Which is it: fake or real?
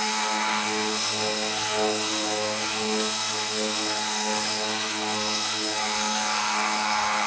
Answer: fake